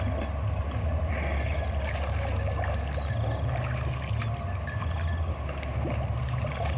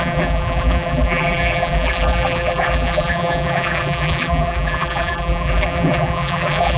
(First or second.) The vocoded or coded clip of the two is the second